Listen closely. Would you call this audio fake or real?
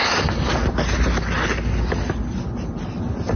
real